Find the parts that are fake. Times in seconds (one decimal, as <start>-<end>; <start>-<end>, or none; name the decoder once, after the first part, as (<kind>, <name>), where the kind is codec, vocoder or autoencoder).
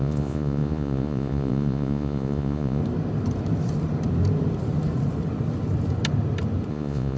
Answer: 0.0-2.8 (vocoder, Vocos); 6.7-7.2